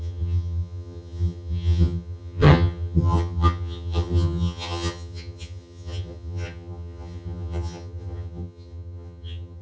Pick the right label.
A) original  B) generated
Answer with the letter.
B